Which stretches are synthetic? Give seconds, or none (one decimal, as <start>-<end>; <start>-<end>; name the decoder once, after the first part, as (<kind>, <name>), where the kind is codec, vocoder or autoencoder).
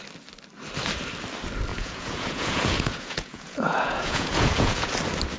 1.7-4.9 (vocoder, Vocos)